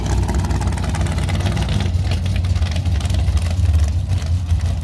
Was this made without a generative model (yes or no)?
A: yes